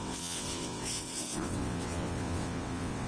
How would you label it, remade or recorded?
remade